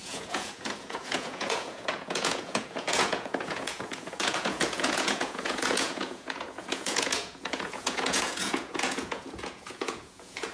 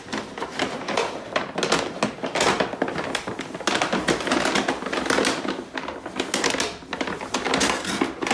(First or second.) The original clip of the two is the second